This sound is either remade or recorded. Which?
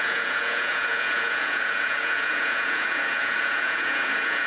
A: remade